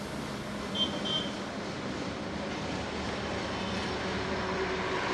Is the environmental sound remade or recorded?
recorded